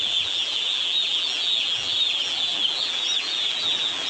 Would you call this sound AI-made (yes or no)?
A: yes